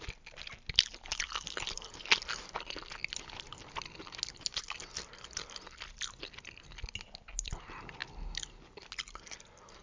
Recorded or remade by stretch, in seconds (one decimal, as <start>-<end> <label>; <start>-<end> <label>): 0.0-9.8 recorded